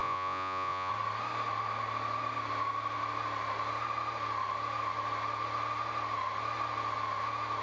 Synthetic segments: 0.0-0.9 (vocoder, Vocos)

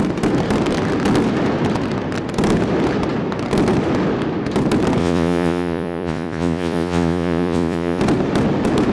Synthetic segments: 5.0-8.0 (vocoder, Vocos)

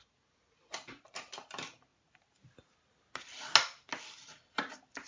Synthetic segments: none

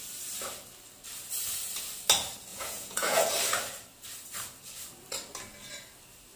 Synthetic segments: 2.5-3.3 (vocoder, Vocos)

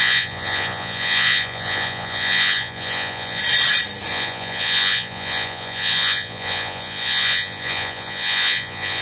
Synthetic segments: 0.0-3.4 (vocoder, Vocos); 4.1-9.0